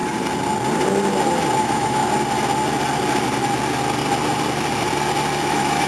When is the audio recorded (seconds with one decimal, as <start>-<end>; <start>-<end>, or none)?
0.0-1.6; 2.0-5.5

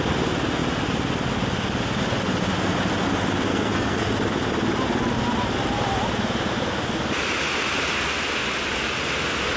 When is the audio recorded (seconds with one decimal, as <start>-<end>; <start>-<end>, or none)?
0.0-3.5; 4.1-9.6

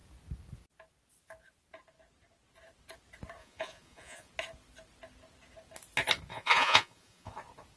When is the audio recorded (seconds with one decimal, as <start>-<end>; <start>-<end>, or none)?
0.0-3.4; 4.3-6.3; 7.3-7.8

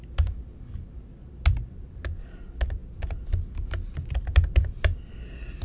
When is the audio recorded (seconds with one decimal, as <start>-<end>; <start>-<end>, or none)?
0.0-5.6

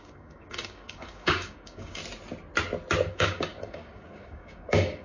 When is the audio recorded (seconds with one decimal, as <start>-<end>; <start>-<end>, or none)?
2.0-3.1